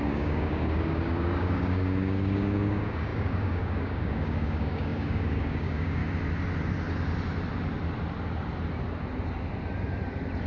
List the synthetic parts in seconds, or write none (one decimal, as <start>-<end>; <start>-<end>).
0.0-6.0

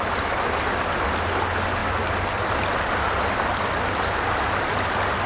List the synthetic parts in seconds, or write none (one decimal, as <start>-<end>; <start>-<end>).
none

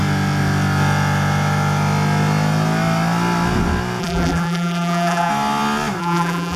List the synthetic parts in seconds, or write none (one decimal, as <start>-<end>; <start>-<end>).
4.0-5.3; 6.0-6.6

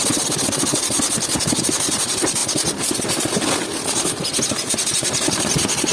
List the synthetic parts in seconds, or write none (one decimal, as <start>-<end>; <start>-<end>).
0.0-2.4; 4.5-5.9

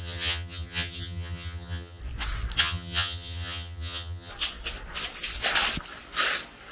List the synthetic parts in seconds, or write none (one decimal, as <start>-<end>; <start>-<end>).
0.0-2.0; 2.6-4.3

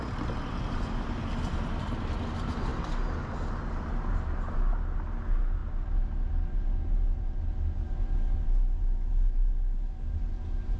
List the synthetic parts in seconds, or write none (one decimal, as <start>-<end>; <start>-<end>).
none

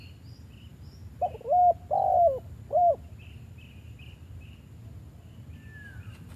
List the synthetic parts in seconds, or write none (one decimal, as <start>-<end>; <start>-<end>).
0.7-1.6